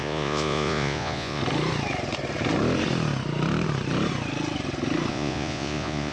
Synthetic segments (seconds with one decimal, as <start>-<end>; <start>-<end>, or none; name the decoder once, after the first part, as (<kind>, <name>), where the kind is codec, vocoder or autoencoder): 0.0-1.4 (vocoder, Vocos); 5.1-6.1